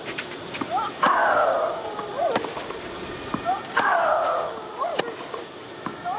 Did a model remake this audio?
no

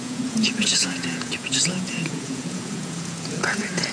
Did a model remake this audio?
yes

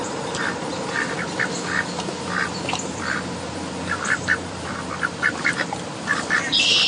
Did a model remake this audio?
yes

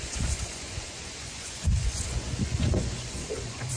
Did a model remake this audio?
yes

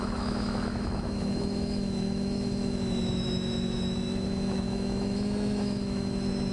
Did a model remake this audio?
yes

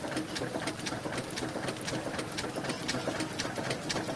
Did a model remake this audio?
no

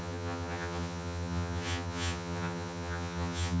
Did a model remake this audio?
yes